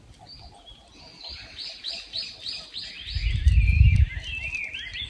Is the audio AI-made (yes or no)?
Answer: no